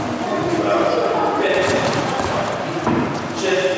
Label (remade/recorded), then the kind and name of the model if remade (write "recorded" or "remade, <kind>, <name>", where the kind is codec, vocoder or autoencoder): recorded